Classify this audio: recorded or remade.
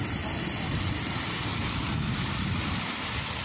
recorded